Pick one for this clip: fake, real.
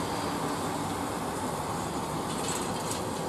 real